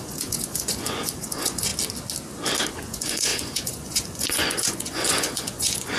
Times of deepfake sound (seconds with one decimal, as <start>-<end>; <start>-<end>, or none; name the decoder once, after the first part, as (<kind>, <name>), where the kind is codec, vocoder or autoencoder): 0.0-1.7 (vocoder, Vocos); 2.7-6.0